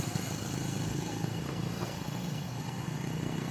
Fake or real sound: fake